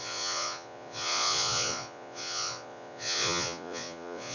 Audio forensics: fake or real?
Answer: fake